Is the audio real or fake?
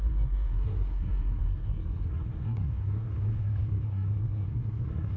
fake